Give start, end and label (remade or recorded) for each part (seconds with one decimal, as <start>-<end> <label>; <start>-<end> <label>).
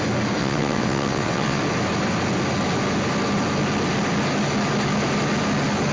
0.0-0.4 recorded; 0.4-1.6 remade; 1.6-5.9 recorded